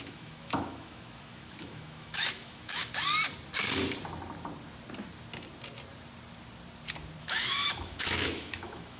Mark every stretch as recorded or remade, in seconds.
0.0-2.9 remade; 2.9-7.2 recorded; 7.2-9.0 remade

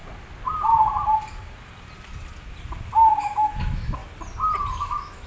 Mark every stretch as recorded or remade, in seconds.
0.0-3.2 recorded; 3.2-4.0 remade; 4.0-4.7 recorded; 4.7-5.3 remade

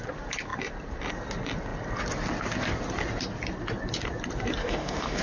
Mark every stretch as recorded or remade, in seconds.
0.0-4.6 recorded; 4.6-5.2 remade

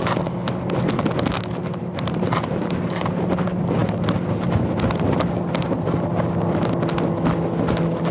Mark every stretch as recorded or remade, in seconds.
0.0-8.1 recorded

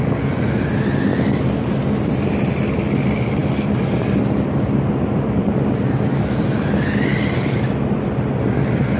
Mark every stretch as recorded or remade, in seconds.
0.0-9.0 recorded

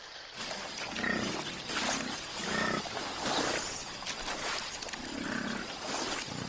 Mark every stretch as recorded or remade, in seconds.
0.0-2.3 recorded; 2.3-2.8 remade; 2.8-6.5 recorded

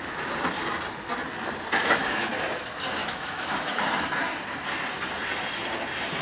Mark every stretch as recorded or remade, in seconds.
0.0-1.8 recorded; 1.8-2.3 remade; 2.3-3.0 recorded; 3.0-3.8 remade; 3.8-6.2 recorded

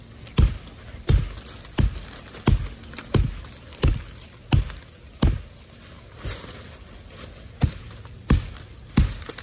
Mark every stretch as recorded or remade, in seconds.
0.0-9.4 recorded